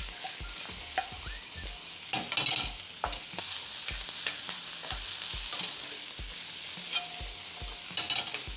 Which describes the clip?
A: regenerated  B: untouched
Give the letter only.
B